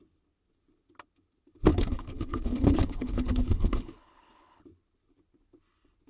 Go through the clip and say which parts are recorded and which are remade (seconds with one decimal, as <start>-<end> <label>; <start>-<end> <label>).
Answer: 0.0-1.7 recorded; 1.7-4.6 remade; 4.6-6.1 recorded